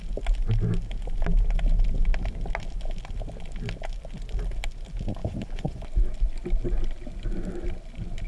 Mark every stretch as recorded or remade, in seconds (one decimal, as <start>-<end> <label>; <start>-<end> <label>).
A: 0.0-5.2 recorded; 5.2-5.8 remade; 5.8-8.3 recorded